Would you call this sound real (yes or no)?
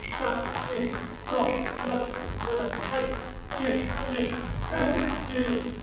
no